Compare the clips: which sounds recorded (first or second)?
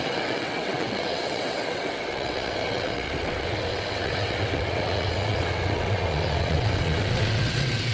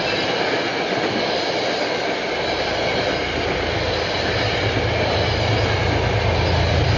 second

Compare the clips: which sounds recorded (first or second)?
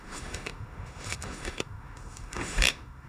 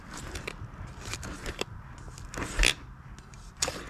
second